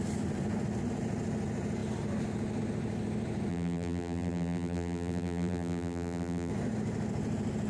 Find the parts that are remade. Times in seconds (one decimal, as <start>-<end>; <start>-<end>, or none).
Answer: 3.5-6.5